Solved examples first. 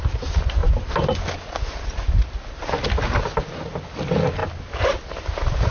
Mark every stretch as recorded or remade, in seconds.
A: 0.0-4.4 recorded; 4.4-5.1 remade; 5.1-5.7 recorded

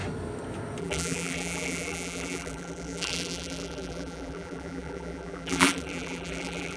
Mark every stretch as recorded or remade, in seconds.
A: 0.0-0.8 recorded; 0.8-6.8 remade

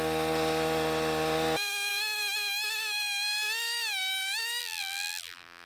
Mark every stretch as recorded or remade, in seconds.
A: 0.0-4.6 recorded; 4.6-5.7 remade

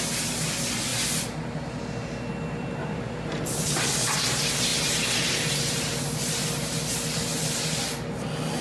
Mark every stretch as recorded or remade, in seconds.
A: 0.0-2.8 recorded; 2.8-3.6 remade; 3.6-8.6 recorded

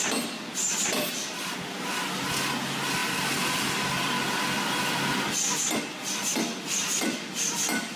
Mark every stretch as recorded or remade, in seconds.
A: 0.0-8.0 recorded

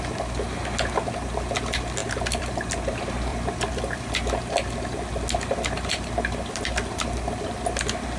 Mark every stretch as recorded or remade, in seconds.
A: 0.0-2.0 recorded; 2.0-2.5 remade; 2.5-3.3 recorded; 3.3-4.0 remade; 4.0-8.2 recorded

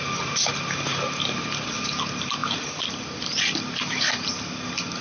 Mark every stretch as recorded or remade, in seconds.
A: 0.0-0.9 recorded; 0.9-1.7 remade; 1.7-2.4 recorded; 2.4-4.3 remade; 4.3-5.0 recorded

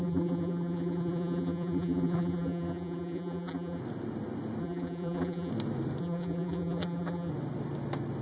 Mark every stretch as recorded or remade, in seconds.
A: 0.0-3.8 remade; 3.8-4.6 recorded; 4.6-5.5 remade; 5.5-6.0 recorded; 6.0-7.3 remade; 7.3-8.2 recorded